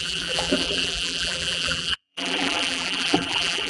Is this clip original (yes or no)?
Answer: no